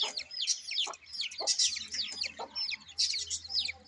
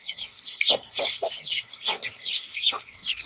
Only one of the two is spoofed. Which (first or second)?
second